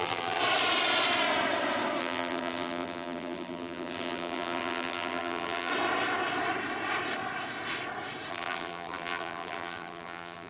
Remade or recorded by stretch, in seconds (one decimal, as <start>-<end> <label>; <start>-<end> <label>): 0.0-0.4 remade; 0.4-2.0 recorded; 2.0-5.7 remade; 5.7-8.3 recorded; 8.3-10.5 remade